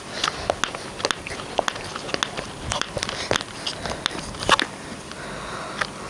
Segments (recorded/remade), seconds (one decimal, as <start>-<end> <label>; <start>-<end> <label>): 0.0-2.7 recorded; 2.7-3.2 remade; 3.2-6.1 recorded